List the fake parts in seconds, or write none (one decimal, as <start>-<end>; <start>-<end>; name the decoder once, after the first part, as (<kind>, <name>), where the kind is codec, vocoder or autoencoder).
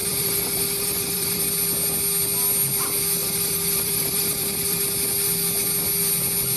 0.0-1.4 (vocoder, BigVGAN v2); 3.2-4.8